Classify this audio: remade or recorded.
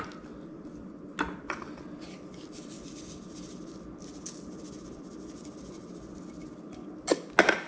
recorded